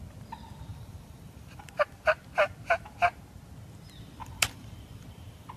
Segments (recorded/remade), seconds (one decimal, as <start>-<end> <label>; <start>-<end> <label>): 0.0-0.7 recorded; 0.7-1.7 remade; 1.7-4.2 recorded; 4.2-5.6 remade